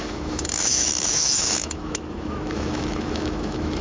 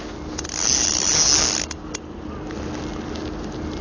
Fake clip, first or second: first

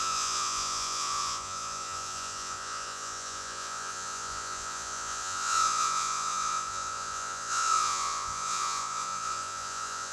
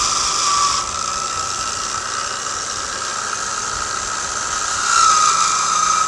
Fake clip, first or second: first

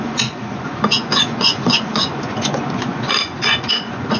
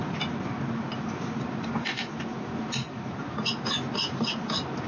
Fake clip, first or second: first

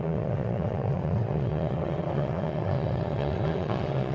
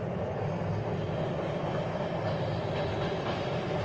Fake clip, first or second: first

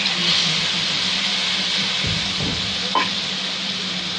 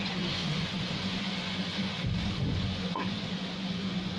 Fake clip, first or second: second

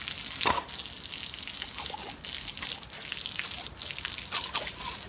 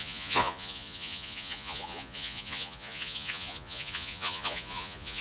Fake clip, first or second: second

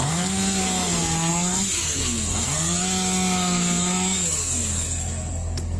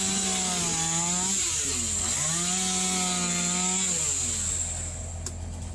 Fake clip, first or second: first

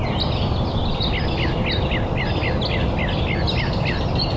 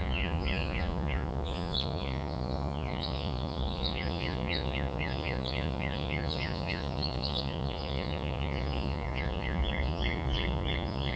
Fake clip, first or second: second